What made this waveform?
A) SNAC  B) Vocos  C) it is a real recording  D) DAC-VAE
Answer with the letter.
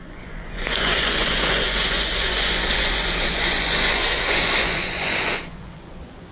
B